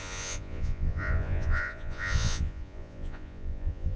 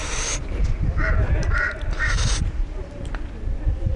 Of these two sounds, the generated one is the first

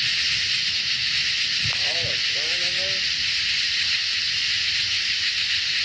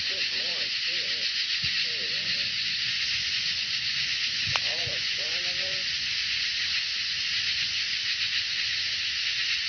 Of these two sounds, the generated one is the second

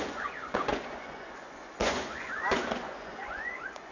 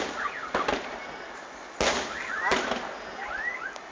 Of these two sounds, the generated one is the first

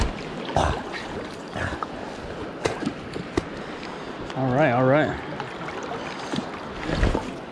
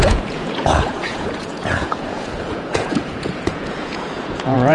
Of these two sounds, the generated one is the second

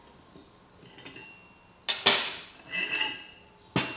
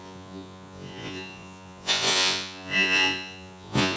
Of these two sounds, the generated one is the second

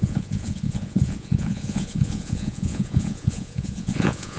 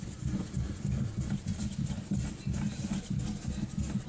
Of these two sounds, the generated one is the first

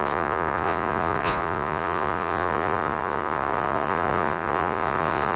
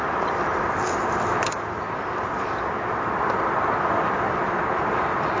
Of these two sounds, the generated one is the first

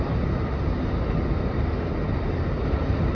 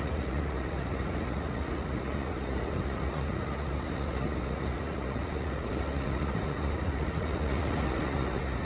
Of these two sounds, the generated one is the second